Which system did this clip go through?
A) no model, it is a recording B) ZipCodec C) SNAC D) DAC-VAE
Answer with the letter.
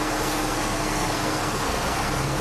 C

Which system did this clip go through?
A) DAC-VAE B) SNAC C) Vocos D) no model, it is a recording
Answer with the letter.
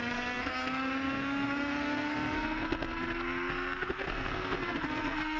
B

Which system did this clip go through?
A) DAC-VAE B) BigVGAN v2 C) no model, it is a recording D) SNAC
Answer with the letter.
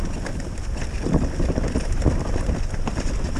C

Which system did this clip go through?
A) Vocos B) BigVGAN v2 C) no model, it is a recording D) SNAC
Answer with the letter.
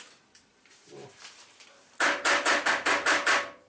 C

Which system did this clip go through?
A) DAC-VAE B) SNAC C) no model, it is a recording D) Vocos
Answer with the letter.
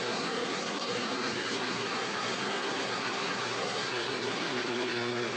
B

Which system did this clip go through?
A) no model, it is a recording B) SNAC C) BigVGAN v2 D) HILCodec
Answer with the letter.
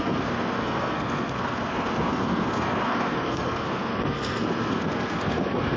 B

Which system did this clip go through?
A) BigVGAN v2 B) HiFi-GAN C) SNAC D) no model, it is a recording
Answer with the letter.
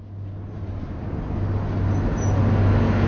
D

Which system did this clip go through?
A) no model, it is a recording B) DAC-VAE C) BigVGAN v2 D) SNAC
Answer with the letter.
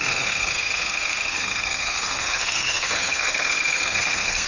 D